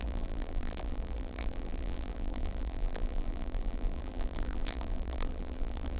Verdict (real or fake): fake